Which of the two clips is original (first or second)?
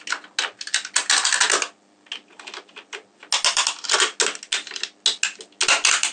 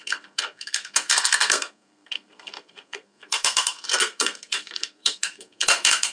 first